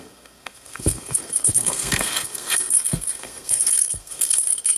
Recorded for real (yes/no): no